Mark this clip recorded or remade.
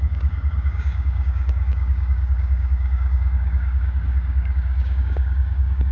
remade